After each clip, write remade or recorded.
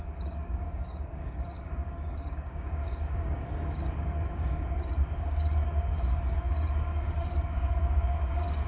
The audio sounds remade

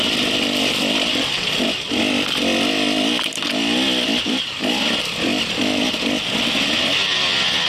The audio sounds remade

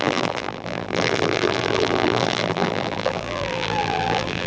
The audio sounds remade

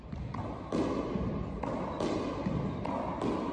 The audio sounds recorded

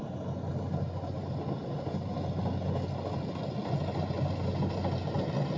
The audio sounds recorded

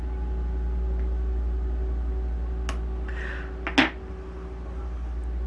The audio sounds recorded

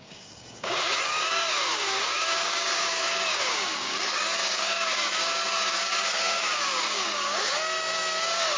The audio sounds remade